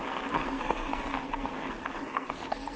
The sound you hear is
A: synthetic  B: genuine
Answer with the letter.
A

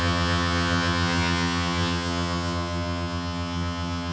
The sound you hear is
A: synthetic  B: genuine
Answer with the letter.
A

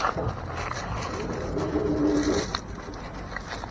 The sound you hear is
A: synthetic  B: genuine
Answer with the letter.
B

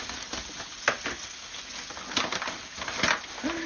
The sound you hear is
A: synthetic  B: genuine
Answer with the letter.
B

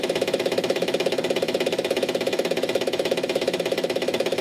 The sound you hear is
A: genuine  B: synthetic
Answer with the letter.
B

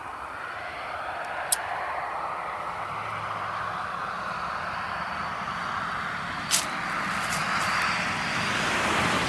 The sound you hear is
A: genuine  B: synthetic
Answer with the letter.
A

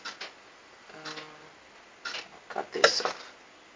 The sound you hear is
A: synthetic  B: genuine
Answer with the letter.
B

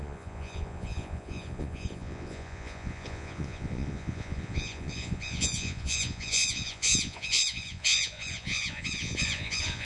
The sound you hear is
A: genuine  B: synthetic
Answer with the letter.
B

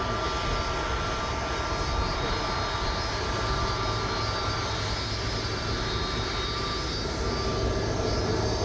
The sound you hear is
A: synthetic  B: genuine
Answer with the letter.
B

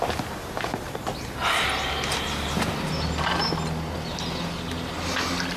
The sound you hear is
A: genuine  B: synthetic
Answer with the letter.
A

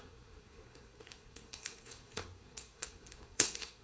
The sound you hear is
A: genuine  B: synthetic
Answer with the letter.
B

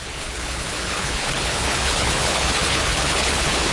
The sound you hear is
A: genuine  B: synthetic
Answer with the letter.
B